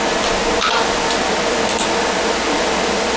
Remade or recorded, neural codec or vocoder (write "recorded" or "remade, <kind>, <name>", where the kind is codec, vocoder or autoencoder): recorded